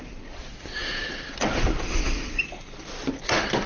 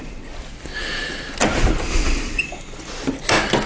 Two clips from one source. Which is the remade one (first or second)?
first